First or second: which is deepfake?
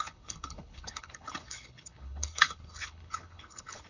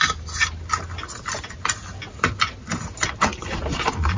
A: first